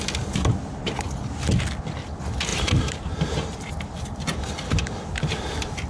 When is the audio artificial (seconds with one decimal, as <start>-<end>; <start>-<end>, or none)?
2.5-3.7